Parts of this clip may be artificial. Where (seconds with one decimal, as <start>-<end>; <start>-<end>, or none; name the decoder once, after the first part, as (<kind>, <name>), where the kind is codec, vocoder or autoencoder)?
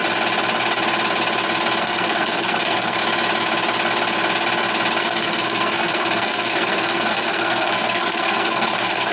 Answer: 1.8-3.0 (codec, SNAC); 5.0-9.1